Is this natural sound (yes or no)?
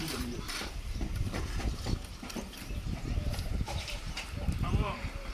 no